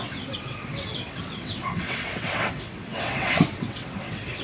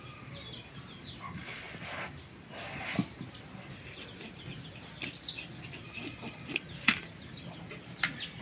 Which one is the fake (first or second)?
first